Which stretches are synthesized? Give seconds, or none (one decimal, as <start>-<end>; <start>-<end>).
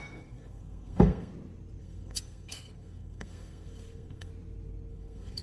0.0-1.3; 1.8-4.3; 4.9-5.4